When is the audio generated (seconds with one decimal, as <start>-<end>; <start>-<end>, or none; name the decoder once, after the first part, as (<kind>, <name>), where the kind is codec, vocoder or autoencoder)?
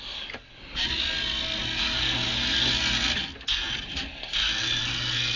none